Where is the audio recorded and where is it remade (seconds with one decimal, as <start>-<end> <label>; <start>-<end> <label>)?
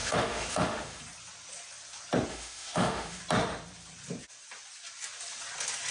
0.0-1.0 remade; 1.0-2.3 recorded; 2.3-3.2 remade; 3.2-5.9 recorded